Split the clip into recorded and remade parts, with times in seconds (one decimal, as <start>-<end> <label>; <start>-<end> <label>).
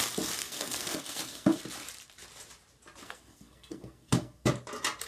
0.0-0.4 recorded; 0.4-1.6 remade; 1.6-3.0 recorded; 3.0-4.5 remade; 4.5-5.1 recorded